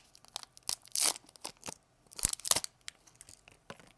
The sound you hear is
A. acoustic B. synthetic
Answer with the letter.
A